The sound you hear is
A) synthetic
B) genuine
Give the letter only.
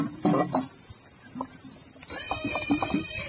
B